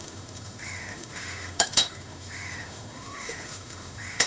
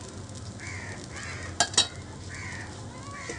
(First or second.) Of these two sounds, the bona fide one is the second